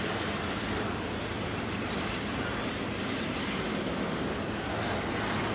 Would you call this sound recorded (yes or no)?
yes